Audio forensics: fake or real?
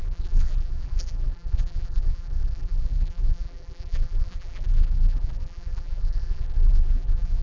fake